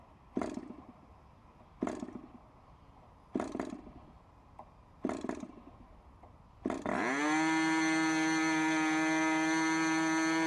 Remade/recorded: recorded